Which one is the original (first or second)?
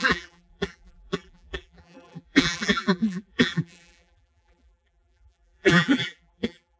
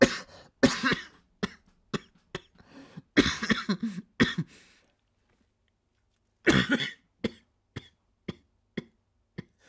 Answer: second